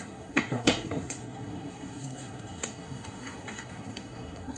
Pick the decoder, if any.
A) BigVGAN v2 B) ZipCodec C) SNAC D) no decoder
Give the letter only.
C